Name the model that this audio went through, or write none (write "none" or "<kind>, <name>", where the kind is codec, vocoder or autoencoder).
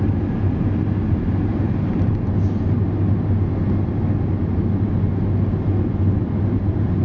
none